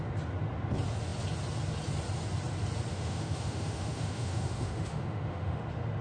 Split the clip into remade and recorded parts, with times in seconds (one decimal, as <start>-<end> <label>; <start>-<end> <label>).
0.0-2.9 recorded; 2.9-5.6 remade; 5.6-6.0 recorded